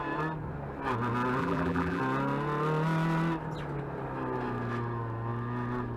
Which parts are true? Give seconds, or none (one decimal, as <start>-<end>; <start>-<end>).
0.0-1.4; 2.0-6.0